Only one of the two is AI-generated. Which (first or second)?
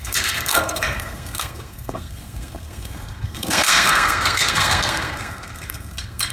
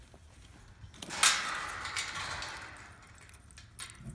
first